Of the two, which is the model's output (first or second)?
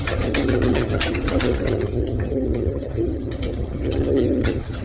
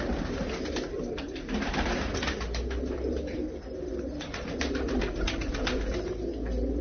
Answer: first